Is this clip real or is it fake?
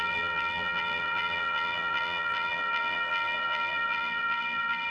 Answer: fake